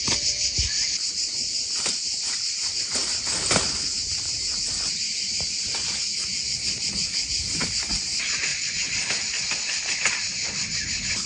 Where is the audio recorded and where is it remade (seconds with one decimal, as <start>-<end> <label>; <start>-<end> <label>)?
0.0-6.1 recorded; 6.1-6.9 remade; 6.9-8.5 recorded; 8.5-9.4 remade; 9.4-11.3 recorded